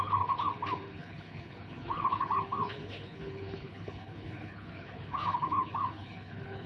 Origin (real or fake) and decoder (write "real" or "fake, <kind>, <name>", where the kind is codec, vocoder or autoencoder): fake, codec, HILCodec